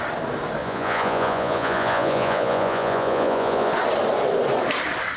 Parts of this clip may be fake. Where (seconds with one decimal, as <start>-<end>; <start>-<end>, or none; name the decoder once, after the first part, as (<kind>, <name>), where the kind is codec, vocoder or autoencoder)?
0.6-3.7 (vocoder, Vocos)